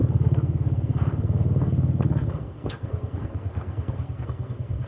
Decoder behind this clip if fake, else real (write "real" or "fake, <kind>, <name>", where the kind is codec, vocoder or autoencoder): fake, codec, SNAC